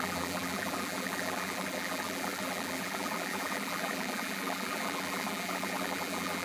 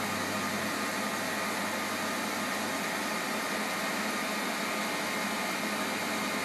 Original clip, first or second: second